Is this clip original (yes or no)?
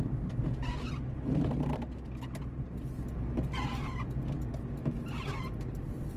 yes